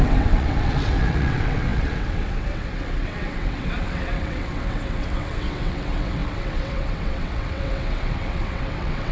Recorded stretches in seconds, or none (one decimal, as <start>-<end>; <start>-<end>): none